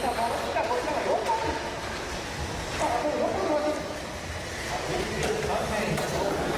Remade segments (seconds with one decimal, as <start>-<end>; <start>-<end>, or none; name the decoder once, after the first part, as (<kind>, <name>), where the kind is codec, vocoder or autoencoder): 0.0-1.4 (vocoder, BigVGAN v2); 4.4-6.6